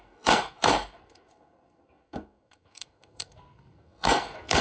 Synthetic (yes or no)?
yes